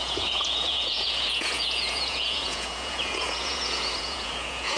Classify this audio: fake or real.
fake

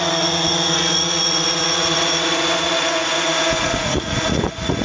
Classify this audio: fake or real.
fake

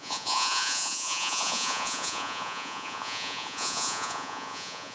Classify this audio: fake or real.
fake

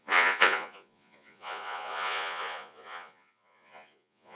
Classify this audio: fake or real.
fake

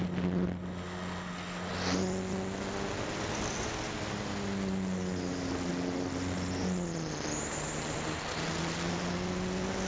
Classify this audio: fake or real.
real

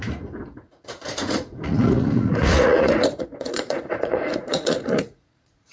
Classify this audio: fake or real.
fake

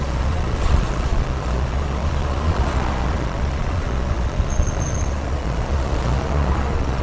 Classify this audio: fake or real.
fake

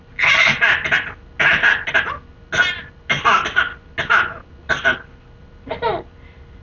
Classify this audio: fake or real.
real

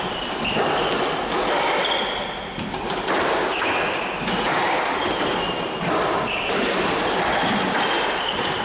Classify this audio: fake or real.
real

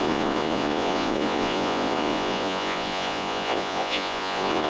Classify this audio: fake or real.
fake